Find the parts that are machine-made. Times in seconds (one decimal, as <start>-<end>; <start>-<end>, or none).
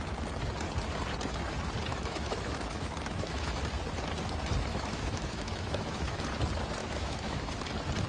1.9-3.6; 4.7-6.2; 6.8-7.5